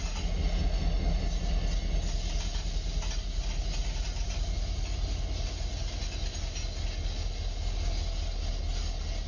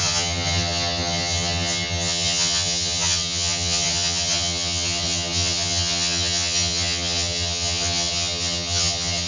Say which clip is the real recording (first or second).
first